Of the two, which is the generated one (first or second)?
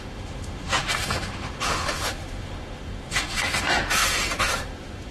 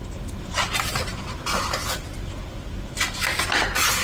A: first